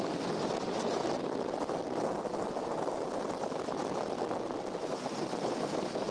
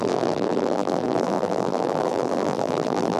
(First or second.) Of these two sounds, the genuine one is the first